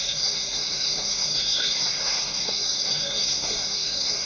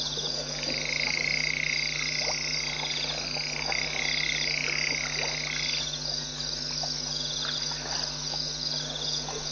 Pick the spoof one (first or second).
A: first